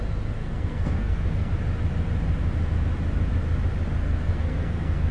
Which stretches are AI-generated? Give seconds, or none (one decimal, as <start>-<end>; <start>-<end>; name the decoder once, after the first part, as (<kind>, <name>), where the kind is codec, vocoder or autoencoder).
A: 0.4-1.5 (codec, SNAC); 4.0-5.1